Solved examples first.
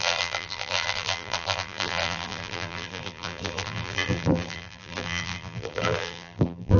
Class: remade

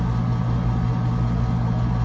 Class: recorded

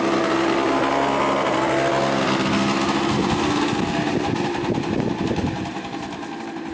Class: recorded